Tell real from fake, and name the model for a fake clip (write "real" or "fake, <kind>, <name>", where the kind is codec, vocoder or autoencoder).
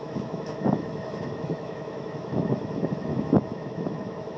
fake, autoencoder, DAC-VAE